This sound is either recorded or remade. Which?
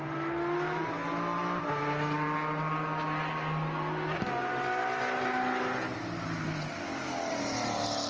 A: recorded